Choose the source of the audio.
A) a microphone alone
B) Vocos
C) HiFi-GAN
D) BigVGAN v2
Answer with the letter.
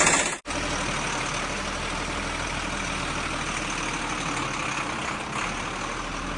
A